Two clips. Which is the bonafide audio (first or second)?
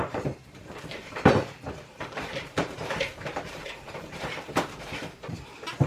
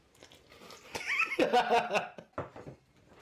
second